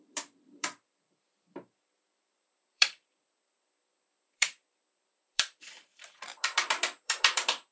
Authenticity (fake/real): fake